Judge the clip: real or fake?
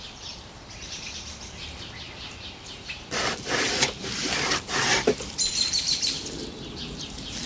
fake